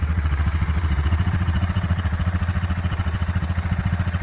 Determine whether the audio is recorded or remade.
remade